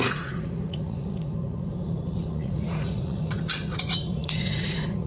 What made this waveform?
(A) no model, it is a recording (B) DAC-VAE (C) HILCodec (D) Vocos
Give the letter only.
D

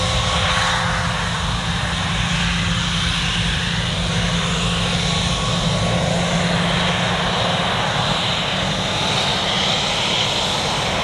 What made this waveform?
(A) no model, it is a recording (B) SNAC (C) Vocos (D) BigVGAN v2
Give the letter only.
A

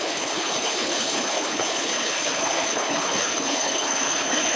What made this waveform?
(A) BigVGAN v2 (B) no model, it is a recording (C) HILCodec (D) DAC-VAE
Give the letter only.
C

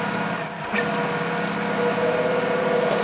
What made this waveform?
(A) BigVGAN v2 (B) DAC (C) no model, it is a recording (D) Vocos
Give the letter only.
C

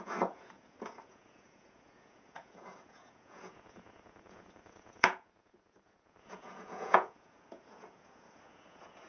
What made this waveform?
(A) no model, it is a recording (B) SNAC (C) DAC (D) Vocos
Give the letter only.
D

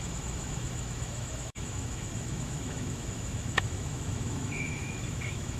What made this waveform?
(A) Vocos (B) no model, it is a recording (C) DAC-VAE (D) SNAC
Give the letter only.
C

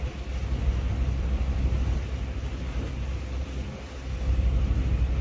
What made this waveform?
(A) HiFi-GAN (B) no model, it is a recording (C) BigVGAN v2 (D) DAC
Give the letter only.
B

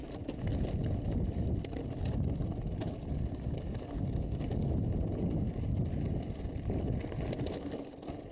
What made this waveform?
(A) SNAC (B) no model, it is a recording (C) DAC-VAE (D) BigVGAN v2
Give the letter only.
B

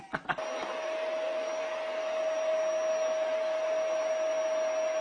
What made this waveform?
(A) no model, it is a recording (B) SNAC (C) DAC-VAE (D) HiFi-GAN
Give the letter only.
A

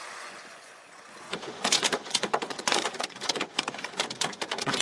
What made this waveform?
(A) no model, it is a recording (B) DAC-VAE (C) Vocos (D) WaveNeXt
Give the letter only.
C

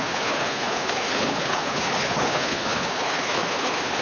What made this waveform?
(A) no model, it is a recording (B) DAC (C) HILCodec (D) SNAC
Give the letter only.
C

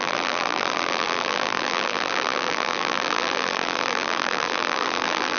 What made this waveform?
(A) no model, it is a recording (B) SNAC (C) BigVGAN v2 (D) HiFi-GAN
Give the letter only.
C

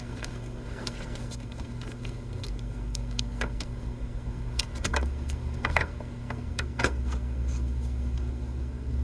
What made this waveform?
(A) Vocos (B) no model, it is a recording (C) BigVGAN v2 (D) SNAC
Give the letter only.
D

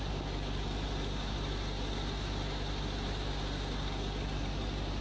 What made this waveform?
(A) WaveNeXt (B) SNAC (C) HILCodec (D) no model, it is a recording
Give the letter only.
D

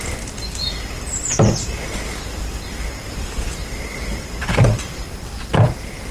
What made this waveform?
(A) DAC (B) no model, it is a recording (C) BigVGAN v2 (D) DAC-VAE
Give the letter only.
C